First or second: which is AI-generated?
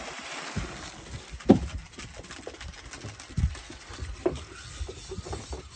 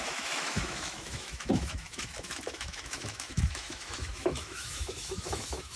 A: second